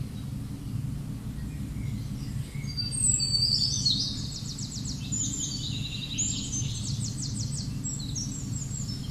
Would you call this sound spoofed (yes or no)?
no